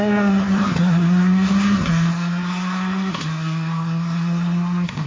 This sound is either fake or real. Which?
fake